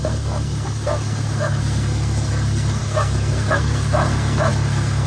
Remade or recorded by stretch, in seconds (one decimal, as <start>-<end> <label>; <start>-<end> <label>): 0.0-5.1 remade